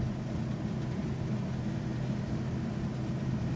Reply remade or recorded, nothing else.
remade